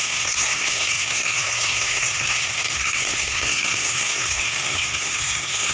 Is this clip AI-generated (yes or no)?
yes